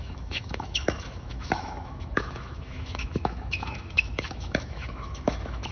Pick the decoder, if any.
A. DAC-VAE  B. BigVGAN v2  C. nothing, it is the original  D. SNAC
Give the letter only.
A